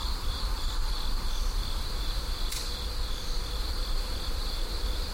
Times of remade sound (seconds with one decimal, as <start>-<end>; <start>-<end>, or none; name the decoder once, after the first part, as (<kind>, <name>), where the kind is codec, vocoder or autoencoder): 0.0-2.6 (vocoder, BigVGAN v2); 3.6-5.1